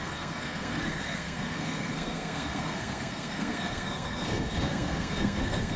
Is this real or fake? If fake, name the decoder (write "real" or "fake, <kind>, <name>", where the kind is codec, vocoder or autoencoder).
fake, codec, SNAC